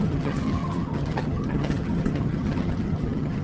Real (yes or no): no